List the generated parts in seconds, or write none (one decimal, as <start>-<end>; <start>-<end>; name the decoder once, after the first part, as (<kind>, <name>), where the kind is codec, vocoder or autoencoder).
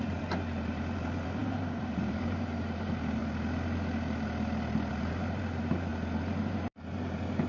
0.0-3.2 (vocoder, BigVGAN v2); 4.9-5.9; 6.5-7.5